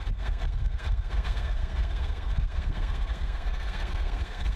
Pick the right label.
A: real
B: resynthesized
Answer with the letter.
B